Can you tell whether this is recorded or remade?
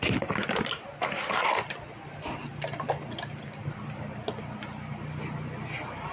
recorded